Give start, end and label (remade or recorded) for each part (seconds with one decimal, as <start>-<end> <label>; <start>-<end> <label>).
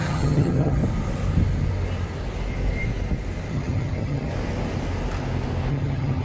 0.0-0.8 remade; 0.8-3.5 recorded; 3.5-4.3 remade; 4.3-5.7 recorded; 5.7-6.2 remade